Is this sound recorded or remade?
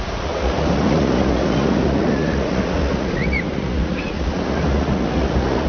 remade